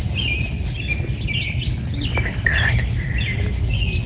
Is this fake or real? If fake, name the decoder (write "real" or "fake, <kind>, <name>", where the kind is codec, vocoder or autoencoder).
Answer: real